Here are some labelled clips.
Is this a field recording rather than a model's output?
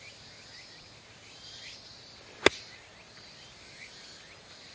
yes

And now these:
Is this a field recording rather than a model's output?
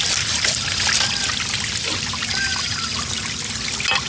yes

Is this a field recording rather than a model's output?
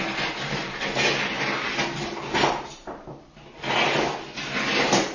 yes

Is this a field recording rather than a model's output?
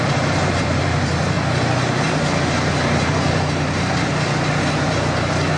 no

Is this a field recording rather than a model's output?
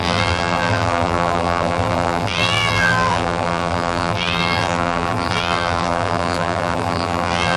no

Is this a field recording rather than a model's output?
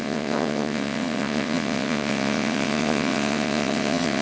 no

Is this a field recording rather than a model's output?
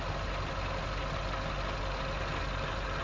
yes